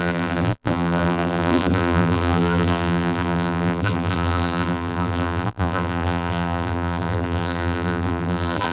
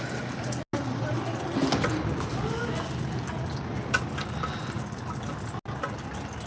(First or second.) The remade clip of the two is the first